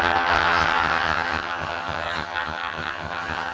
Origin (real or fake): fake